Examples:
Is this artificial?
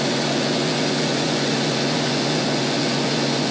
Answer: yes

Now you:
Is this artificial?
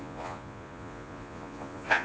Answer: yes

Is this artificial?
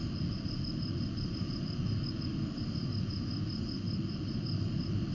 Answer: no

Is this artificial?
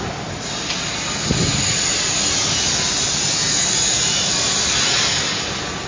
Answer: no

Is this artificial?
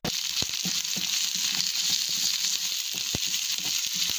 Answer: no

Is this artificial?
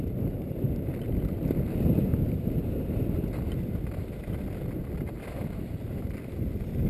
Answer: no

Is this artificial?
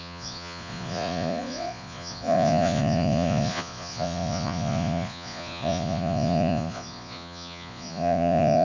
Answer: yes